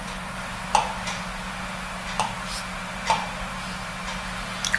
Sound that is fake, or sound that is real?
real